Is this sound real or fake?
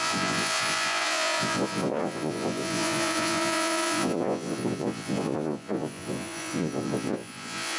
fake